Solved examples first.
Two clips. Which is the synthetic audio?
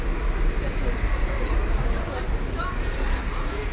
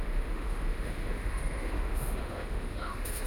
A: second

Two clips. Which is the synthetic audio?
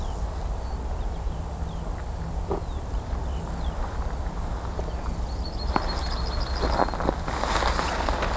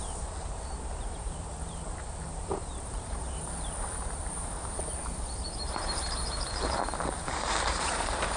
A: second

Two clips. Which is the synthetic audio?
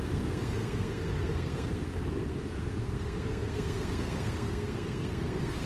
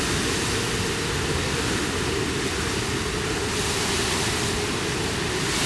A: first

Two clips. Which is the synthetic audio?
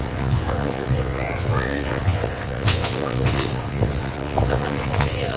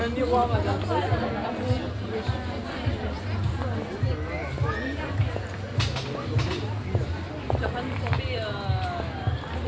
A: first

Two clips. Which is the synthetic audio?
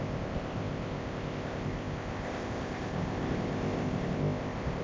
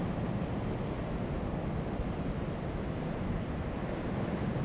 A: first